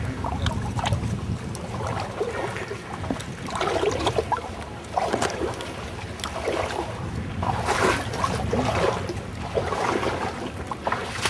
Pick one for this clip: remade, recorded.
recorded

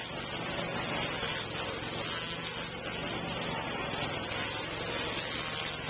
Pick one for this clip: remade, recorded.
recorded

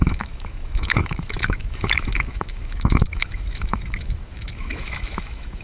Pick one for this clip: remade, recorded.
remade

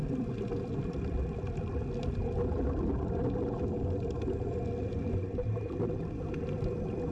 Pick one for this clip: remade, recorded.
recorded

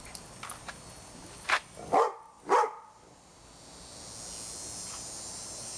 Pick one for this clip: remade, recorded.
recorded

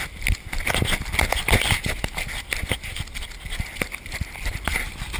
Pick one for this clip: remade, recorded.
recorded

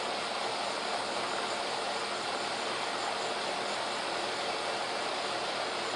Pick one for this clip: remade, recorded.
recorded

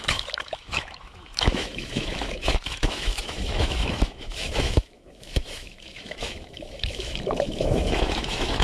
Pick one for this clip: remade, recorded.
remade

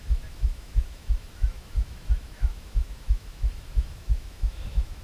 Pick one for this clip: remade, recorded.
remade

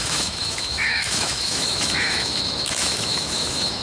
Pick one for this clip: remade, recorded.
remade